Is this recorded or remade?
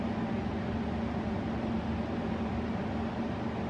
recorded